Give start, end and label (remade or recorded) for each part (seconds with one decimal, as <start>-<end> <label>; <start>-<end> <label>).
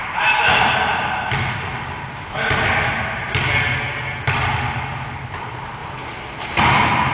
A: 0.0-7.1 recorded